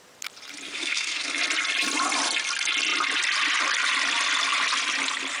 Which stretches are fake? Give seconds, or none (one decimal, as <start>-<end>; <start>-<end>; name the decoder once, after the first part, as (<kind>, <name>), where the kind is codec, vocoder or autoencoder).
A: 0.7-1.4 (codec, SNAC)